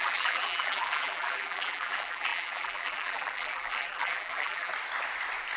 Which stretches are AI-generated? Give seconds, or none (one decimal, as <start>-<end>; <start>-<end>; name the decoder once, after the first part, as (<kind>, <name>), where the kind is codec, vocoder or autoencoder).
0.0-4.7 (vocoder, BigVGAN v2)